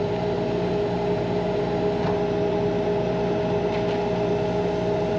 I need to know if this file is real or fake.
real